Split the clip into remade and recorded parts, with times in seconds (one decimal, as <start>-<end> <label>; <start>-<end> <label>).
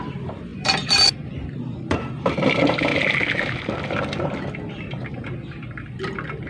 0.0-2.9 remade; 2.9-6.5 recorded